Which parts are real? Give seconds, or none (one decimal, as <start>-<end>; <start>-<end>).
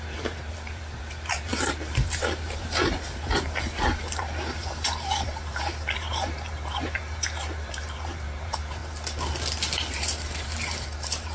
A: 8.8-9.9